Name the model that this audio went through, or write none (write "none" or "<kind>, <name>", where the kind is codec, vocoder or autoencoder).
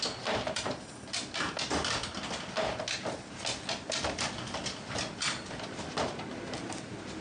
none